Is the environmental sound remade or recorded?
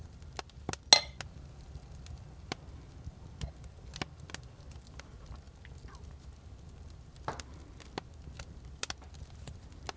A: recorded